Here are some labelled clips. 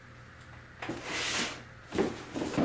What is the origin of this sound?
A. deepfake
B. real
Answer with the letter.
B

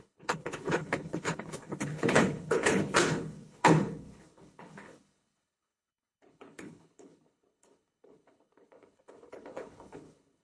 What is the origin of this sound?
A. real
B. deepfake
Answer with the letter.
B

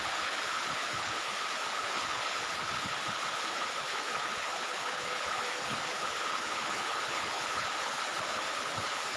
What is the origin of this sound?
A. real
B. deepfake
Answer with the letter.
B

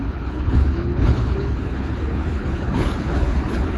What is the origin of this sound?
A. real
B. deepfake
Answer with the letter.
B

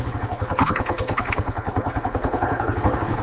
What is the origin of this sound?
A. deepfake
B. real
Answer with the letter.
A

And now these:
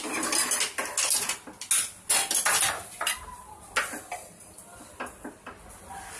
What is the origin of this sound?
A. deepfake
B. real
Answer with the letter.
B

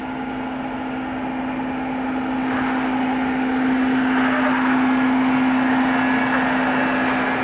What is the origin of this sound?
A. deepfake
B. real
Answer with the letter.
B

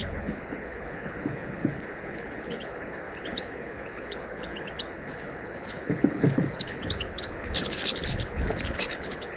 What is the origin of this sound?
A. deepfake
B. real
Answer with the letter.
A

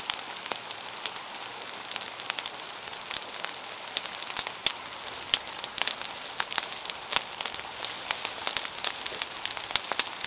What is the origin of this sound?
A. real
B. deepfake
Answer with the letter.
A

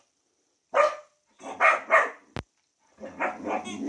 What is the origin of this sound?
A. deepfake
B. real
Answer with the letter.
B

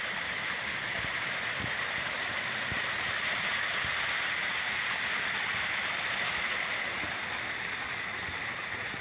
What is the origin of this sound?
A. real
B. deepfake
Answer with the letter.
A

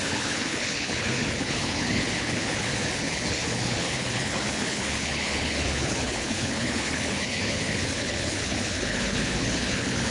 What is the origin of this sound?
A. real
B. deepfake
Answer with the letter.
B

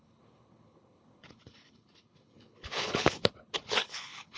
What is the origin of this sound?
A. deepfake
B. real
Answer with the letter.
A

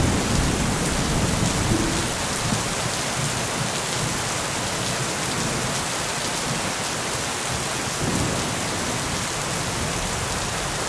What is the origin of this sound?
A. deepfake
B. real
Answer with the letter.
B